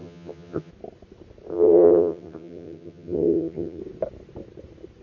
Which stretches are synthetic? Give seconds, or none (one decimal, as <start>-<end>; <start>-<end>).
0.0-0.7; 1.5-3.8